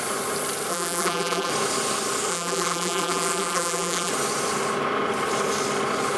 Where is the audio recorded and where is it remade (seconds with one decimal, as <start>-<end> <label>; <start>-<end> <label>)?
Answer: 0.0-0.7 recorded; 0.7-1.5 remade; 1.5-2.3 recorded; 2.3-4.1 remade; 4.1-6.2 recorded